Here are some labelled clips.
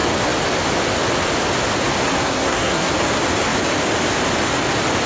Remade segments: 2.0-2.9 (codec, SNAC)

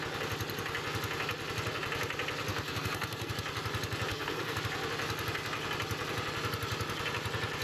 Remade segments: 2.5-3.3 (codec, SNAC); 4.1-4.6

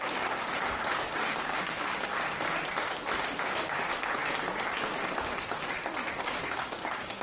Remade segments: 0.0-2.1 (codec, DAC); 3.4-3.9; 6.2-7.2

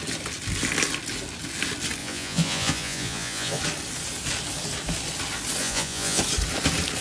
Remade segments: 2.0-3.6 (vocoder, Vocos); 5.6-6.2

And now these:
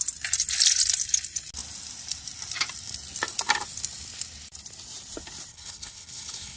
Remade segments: 5.5-6.6 (codec, HILCodec)

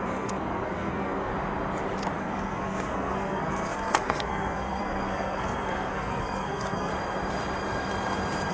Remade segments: 0.0-1.3 (codec, SNAC); 2.2-6.9

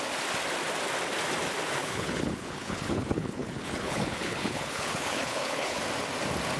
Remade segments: 1.8-5.8 (codec, HILCodec)